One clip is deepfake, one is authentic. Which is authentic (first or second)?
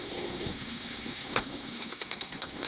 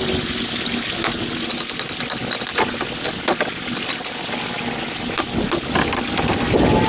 second